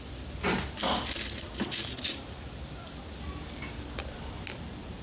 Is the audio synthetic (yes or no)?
no